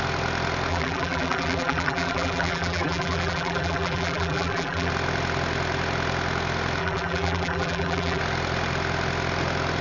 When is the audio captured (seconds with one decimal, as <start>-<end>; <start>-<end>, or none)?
0.0-0.7; 4.9-6.8; 8.2-9.8